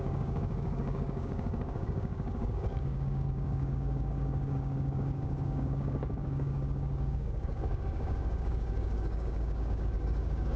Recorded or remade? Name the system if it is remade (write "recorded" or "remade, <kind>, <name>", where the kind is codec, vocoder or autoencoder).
remade, codec, DAC